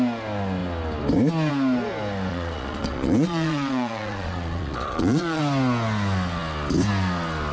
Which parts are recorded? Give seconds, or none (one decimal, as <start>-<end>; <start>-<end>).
0.0-2.3; 5.4-7.5